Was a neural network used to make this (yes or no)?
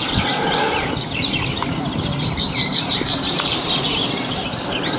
yes